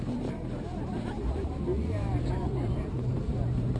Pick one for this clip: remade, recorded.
remade